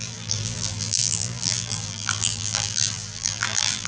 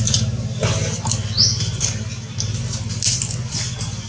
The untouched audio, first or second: second